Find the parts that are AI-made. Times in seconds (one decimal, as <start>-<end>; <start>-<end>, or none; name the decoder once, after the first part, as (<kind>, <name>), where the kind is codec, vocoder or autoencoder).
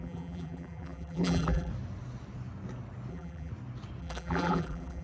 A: 0.0-1.7 (vocoder, BigVGAN v2); 3.1-3.5; 4.0-5.0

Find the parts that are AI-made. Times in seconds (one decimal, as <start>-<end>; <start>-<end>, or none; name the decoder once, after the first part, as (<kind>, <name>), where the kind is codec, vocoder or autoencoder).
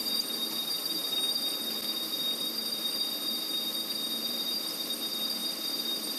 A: 1.3-2.6 (vocoder, BigVGAN v2); 4.3-6.2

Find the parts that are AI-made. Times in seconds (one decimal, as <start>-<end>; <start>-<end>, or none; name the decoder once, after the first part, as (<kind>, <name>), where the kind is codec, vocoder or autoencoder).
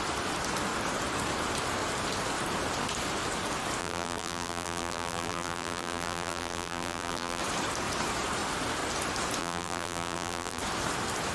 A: 3.8-7.4 (vocoder, BigVGAN v2); 9.4-10.6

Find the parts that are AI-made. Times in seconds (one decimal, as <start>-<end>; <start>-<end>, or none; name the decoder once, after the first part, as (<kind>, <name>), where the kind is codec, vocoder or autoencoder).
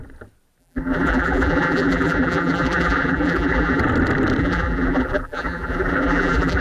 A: 0.6-3.8 (vocoder, BigVGAN v2); 4.4-6.6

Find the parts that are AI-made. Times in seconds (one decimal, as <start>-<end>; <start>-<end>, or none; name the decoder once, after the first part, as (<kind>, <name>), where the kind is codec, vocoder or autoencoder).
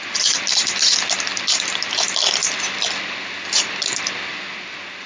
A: 1.3-1.9 (vocoder, BigVGAN v2); 4.3-5.1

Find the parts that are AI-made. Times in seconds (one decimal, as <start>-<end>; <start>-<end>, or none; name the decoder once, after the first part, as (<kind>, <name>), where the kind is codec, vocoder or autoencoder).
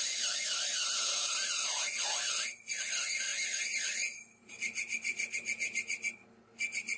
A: none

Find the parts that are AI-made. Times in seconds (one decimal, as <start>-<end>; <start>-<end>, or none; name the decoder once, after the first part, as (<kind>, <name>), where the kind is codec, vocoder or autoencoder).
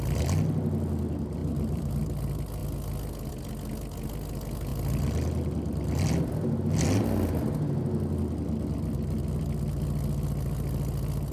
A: 1.4-1.9 (vocoder, BigVGAN v2)